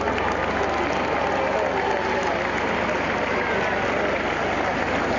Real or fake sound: real